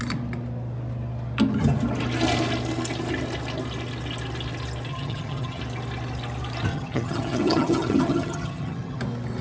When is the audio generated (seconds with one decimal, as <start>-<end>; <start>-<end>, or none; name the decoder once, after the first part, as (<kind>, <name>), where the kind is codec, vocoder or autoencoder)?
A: 4.9-5.6 (vocoder, HiFi-GAN); 6.7-9.0